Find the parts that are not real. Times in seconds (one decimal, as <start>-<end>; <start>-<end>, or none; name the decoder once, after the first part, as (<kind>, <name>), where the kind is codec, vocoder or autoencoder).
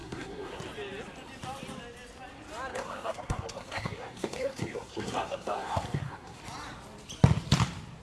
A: 0.0-0.6 (codec, SNAC); 2.7-6.4